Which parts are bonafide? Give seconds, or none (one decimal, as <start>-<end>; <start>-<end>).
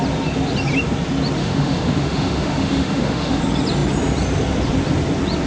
0.0-1.4; 3.4-5.5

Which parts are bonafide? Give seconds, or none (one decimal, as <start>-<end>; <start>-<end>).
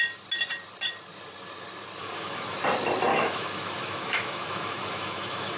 0.0-2.0; 2.6-3.1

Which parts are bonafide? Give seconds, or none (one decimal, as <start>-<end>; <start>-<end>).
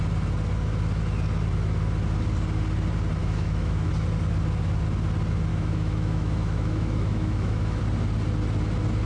0.0-3.2; 3.9-5.5; 7.8-9.1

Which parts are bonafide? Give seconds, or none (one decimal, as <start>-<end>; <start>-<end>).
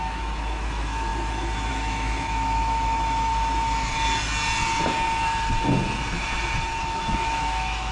1.1-1.7; 3.3-6.8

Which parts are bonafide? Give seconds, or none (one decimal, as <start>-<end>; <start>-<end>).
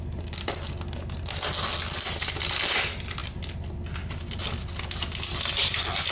0.0-6.1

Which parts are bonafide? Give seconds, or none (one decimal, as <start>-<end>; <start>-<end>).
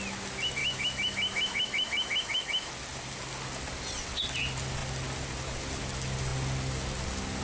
0.0-0.6; 2.7-7.4